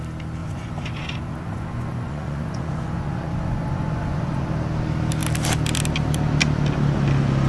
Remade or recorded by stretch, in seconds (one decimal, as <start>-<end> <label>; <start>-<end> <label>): 0.0-0.4 recorded; 0.4-4.5 remade; 4.5-7.5 recorded